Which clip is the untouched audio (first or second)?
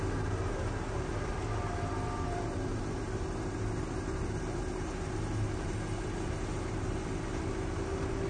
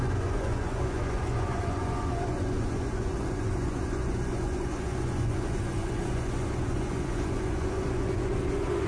first